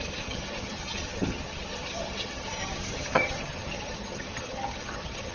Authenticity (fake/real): fake